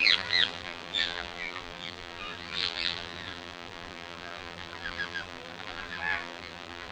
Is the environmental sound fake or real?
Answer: fake